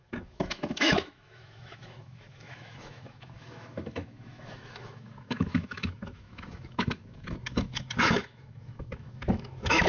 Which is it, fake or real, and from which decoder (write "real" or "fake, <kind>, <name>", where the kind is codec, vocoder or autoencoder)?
fake, autoencoder, DAC-VAE